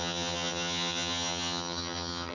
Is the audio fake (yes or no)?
yes